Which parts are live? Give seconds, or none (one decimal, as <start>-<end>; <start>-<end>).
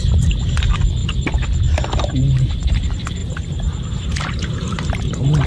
0.0-3.2; 5.1-5.5